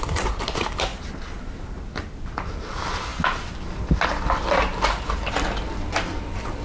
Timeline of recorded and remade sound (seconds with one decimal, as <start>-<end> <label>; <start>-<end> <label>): 0.0-6.6 recorded